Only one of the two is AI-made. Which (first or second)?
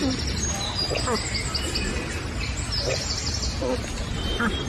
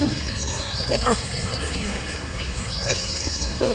second